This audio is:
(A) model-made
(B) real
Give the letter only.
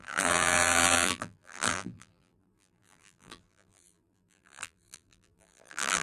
A